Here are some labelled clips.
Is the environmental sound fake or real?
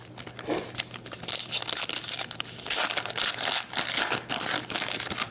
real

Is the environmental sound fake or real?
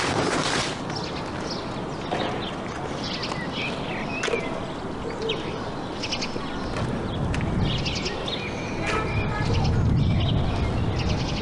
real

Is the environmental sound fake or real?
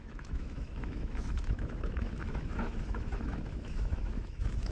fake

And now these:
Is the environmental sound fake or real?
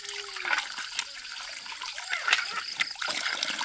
real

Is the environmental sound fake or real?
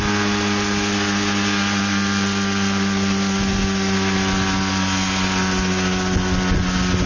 real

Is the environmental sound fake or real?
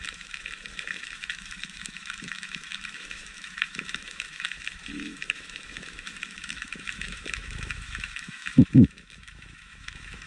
fake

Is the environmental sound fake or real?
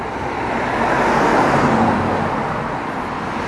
real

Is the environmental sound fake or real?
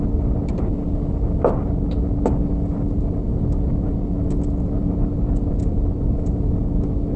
real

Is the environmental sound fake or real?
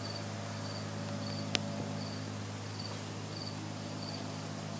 real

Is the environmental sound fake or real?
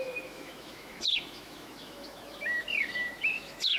fake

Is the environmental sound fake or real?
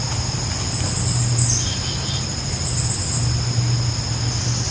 real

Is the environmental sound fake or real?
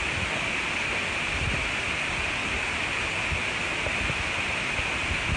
real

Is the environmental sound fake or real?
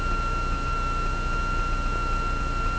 real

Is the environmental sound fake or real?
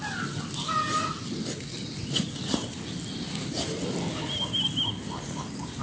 real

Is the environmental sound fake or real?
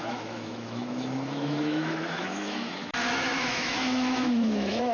fake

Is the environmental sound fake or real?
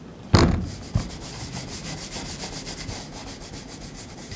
real